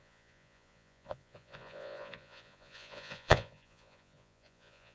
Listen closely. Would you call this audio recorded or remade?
remade